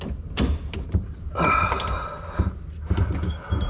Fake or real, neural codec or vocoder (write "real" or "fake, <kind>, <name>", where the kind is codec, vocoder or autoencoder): real